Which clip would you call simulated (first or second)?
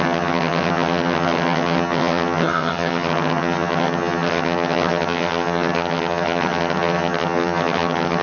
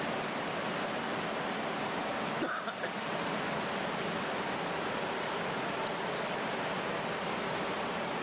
first